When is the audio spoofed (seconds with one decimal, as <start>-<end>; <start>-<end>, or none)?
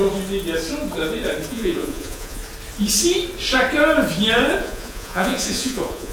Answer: 1.5-2.4; 4.6-6.1